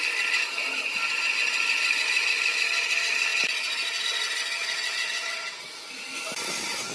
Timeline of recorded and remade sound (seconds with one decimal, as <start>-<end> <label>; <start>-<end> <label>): 0.0-4.6 recorded; 4.6-5.6 remade; 5.6-6.9 recorded